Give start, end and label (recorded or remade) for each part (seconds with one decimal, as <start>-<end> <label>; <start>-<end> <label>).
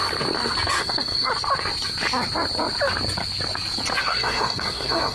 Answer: 0.0-0.8 recorded; 0.8-1.3 remade; 1.3-4.0 recorded; 4.0-5.1 remade